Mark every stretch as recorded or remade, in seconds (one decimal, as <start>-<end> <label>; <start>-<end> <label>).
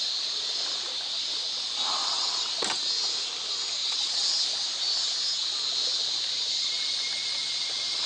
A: 0.0-2.0 recorded; 2.0-2.6 remade; 2.6-3.8 recorded; 3.8-4.3 remade; 4.3-8.1 recorded